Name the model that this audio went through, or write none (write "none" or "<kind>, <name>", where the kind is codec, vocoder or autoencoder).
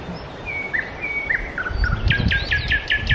none